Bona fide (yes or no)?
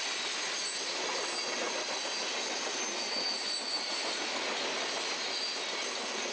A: yes